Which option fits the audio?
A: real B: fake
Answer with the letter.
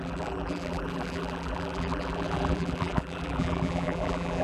B